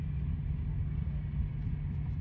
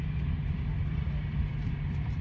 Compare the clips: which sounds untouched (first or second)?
first